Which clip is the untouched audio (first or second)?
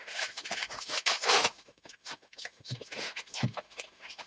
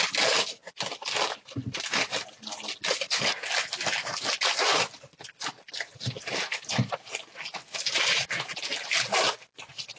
second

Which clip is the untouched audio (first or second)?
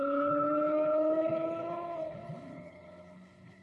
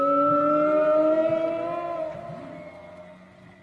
second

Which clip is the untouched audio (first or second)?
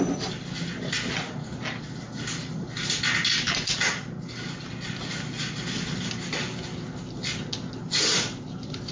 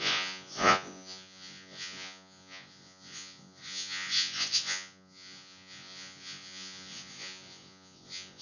first